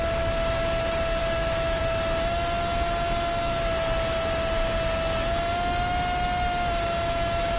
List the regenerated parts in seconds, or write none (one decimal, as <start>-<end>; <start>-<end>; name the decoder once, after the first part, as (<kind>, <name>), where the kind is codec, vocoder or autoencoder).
1.2-1.8 (autoencoder, DAC-VAE)